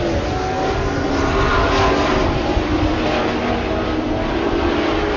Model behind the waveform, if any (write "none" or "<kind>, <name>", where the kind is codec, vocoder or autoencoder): none